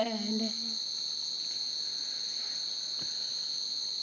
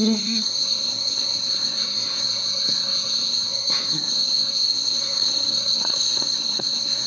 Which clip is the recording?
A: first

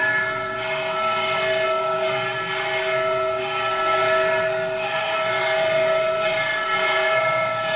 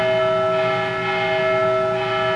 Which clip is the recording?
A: second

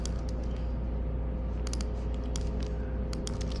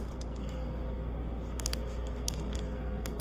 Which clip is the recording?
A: first